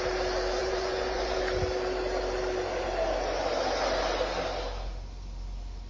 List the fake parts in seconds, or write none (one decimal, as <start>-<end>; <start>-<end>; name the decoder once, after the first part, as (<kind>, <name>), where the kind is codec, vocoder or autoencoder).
0.6-1.4 (vocoder, Vocos)